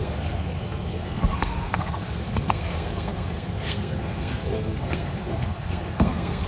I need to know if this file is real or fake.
fake